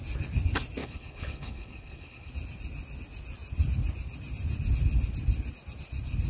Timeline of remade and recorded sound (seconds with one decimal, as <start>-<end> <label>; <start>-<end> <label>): 0.0-0.8 recorded; 0.8-2.3 remade; 2.3-6.3 recorded